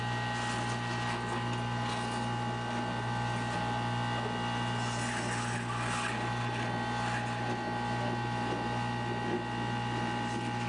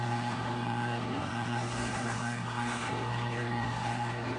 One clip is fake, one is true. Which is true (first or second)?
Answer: first